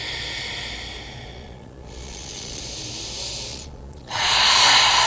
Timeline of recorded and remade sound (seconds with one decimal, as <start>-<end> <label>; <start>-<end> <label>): 0.0-1.3 recorded; 1.3-2.6 remade; 2.6-3.5 recorded; 3.5-4.3 remade; 4.3-5.1 recorded